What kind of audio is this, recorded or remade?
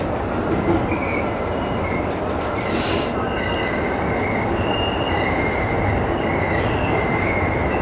recorded